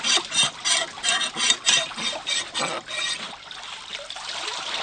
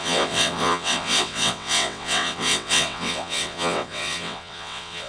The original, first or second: first